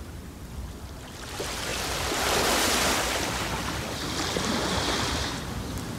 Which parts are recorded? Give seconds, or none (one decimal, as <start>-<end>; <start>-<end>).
0.0-6.0